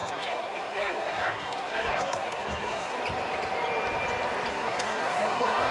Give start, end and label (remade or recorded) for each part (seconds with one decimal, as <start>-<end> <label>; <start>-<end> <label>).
0.0-3.0 remade; 3.0-4.5 recorded; 4.5-5.7 remade